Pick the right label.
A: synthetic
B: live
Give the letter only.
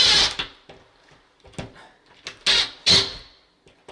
B